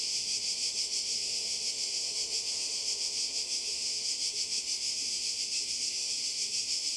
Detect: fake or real fake